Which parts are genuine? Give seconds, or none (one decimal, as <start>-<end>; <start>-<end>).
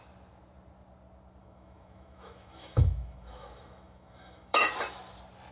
0.0-1.4; 4.7-5.5